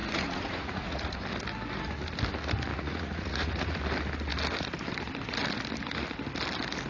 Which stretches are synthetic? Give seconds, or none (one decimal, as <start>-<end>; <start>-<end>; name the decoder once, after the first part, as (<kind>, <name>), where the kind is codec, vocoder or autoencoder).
0.0-1.2 (vocoder, Vocos); 2.7-3.8